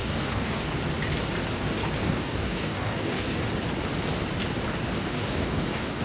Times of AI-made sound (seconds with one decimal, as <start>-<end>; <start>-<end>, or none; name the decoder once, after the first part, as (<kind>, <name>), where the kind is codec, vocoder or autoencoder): 0.0-0.7 (codec, DAC); 2.0-3.4; 5.0-6.0

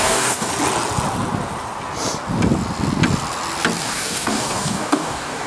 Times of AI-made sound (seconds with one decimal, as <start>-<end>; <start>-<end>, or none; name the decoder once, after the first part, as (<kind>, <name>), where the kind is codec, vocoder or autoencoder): 0.0-0.5 (codec, DAC); 3.8-5.5

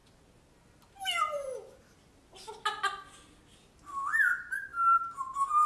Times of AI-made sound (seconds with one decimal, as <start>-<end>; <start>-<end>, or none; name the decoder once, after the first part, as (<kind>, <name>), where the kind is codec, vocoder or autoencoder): none

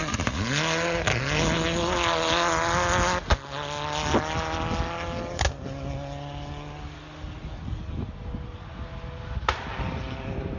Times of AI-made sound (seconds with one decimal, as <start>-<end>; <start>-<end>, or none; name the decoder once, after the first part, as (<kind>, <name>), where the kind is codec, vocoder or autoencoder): none

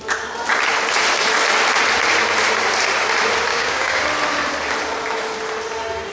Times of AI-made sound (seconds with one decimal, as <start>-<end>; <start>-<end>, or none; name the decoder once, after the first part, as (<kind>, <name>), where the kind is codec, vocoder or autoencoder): 3.5-4.0 (codec, DAC)

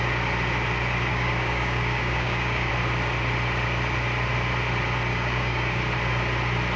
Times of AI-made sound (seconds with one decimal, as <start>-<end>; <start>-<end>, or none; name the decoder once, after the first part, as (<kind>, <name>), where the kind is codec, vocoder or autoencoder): 1.1-2.7 (codec, DAC); 5.1-5.8

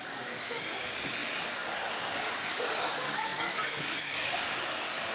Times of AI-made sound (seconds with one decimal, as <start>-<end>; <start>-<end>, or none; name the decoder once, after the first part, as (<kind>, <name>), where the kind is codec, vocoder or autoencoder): 0.0-5.1 (codec, DAC)

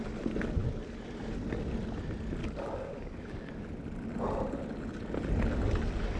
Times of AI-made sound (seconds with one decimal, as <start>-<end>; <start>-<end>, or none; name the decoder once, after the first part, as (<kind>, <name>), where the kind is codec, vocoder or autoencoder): 2.4-3.5 (codec, DAC)